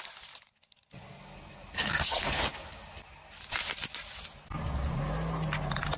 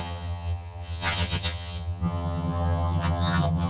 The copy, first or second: second